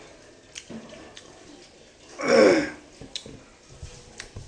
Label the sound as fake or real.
real